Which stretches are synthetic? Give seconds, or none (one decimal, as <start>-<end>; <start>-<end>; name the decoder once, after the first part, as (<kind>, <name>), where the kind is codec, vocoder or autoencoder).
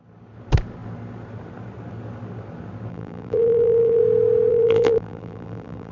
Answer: 2.9-4.0 (vocoder, BigVGAN v2); 4.5-5.9